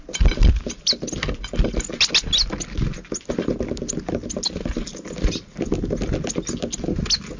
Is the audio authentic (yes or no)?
yes